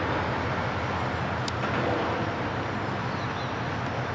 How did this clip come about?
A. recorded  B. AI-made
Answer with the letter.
A